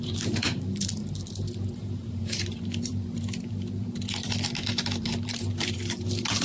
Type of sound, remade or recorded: remade